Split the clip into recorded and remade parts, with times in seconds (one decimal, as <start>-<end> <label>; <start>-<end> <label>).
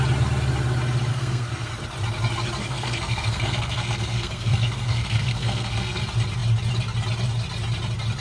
0.0-1.1 recorded; 1.1-1.7 remade; 1.7-2.6 recorded; 2.6-6.0 remade; 6.0-8.2 recorded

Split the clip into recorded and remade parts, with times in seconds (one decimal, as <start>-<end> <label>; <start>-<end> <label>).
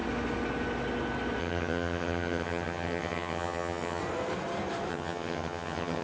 0.0-1.4 recorded; 1.4-4.0 remade; 4.0-4.9 recorded; 4.9-6.0 remade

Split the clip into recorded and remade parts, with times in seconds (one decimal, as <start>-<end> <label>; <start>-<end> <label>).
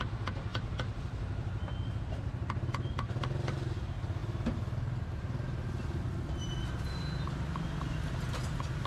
0.0-8.9 recorded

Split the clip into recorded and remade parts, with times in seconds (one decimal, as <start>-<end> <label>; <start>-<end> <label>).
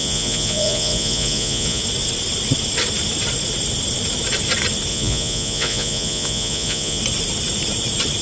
0.0-1.8 remade; 1.8-4.9 recorded; 4.9-7.0 remade; 7.0-8.2 recorded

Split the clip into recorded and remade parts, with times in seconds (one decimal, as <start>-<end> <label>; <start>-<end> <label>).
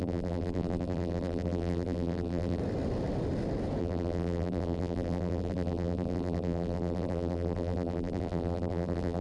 0.0-2.6 remade; 2.6-3.8 recorded; 3.8-9.2 remade